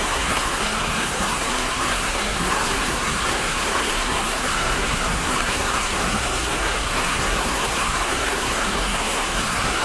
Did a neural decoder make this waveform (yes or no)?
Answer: yes